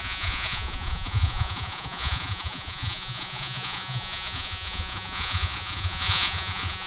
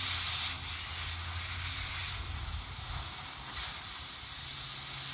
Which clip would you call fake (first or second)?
first